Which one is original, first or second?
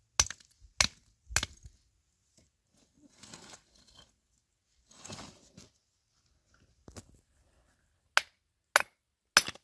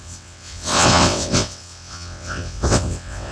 first